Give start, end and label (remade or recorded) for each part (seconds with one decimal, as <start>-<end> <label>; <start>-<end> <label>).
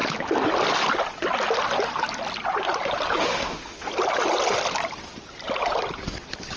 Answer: 0.0-3.2 recorded; 3.2-3.9 remade; 3.9-6.6 recorded